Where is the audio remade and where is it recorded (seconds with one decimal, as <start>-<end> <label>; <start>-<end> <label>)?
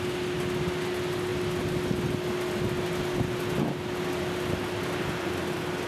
0.0-5.9 recorded